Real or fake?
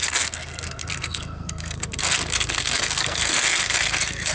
fake